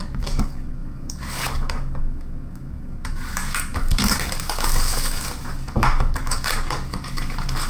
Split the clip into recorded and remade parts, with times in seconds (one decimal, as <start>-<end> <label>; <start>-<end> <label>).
0.0-7.7 remade